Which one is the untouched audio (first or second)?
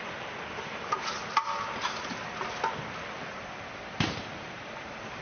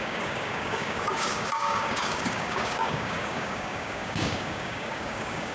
first